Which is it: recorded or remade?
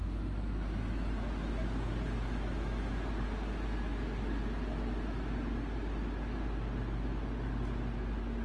recorded